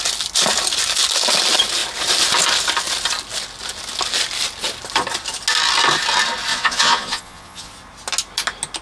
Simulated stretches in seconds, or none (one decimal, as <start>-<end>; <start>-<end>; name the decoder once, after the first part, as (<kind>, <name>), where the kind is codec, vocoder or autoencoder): 6.5-7.7 (vocoder, Vocos)